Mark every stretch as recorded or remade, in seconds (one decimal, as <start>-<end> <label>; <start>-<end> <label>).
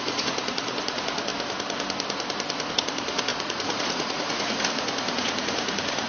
0.0-1.3 remade; 1.3-2.7 recorded; 2.7-6.1 remade